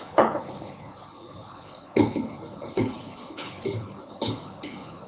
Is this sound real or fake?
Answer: fake